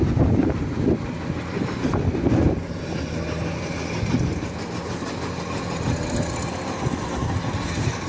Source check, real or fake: real